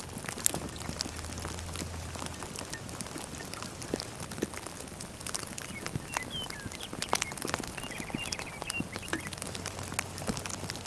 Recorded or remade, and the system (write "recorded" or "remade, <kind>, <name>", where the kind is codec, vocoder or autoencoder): recorded